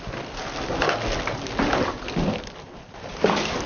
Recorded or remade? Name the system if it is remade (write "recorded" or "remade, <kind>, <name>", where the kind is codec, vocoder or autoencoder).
recorded